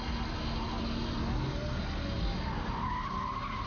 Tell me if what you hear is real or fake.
real